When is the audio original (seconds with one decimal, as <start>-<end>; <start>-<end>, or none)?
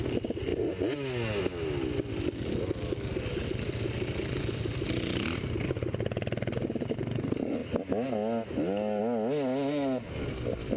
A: 0.0-10.8